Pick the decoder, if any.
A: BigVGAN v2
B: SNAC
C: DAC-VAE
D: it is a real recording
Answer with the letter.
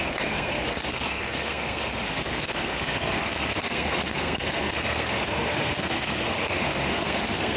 B